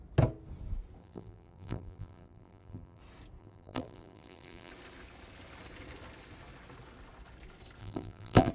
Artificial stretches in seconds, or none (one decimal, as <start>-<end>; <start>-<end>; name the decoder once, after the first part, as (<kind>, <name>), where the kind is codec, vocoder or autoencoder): 1.0-3.0 (vocoder, BigVGAN v2); 3.4-4.7; 7.8-8.5